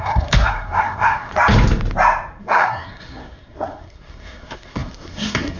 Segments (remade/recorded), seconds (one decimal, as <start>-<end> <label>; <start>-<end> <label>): 0.0-1.3 remade; 1.3-2.4 recorded; 2.4-5.6 remade